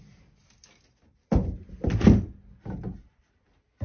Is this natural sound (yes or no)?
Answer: yes